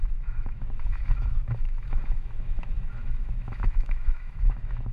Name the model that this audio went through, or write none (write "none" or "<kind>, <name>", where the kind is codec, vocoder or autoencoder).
autoencoder, DAC-VAE